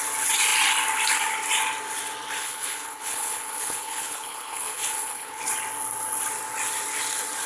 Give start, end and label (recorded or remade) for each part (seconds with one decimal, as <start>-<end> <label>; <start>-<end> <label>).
0.0-2.4 recorded; 2.4-5.4 remade; 5.4-7.5 recorded